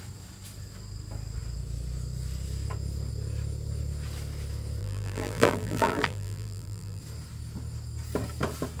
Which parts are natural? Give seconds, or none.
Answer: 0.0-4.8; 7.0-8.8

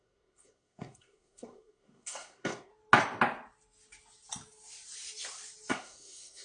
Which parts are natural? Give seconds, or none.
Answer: 2.7-5.7

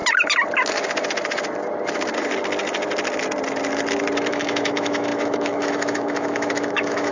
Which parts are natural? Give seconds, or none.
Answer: 0.0-4.3

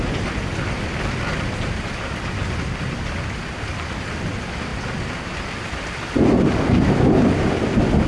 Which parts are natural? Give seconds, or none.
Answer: 0.0-8.1

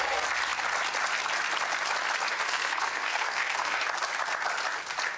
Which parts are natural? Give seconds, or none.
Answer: 0.0-2.3; 3.8-5.2

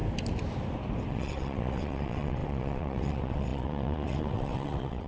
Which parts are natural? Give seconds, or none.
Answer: 0.0-1.1

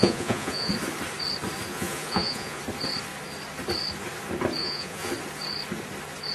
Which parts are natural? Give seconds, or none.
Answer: 0.7-1.7; 2.6-4.6; 5.1-6.3